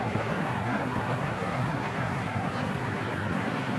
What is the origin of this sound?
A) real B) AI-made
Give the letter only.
B